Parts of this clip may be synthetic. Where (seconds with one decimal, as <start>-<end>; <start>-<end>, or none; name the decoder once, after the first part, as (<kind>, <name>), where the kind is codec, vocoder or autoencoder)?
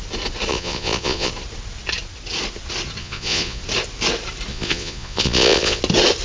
0.5-1.3 (vocoder, Vocos); 3.0-3.6; 4.5-5.8